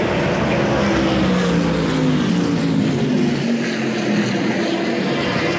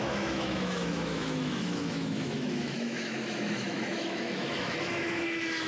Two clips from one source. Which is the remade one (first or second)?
second